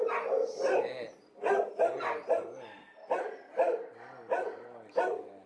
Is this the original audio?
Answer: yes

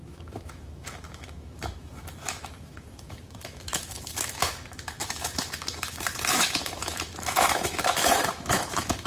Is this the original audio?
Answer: no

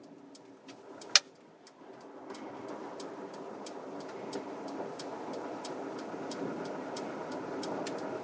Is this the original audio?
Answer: yes